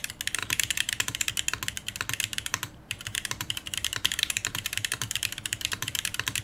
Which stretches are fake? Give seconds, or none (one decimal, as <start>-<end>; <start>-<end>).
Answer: 0.4-1.3; 2.3-6.4